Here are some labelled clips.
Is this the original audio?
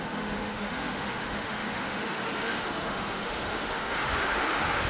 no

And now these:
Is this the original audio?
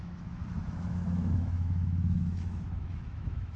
no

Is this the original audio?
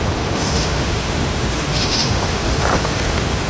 no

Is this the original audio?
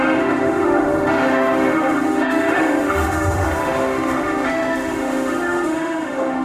no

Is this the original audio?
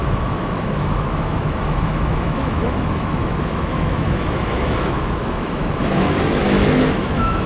no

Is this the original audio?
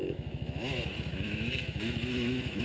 no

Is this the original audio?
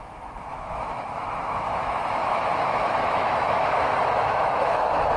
no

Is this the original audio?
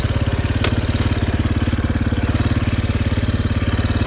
yes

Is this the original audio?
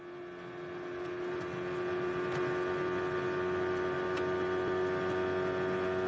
yes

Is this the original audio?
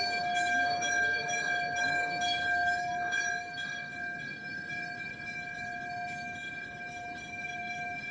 no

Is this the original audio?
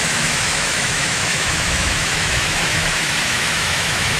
no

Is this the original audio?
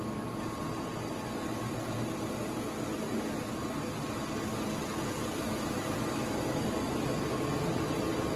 yes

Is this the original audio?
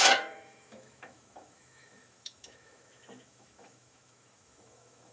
no